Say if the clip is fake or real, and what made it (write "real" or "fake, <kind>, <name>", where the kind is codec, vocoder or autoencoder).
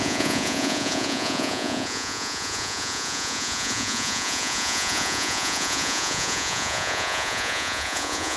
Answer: fake, vocoder, Vocos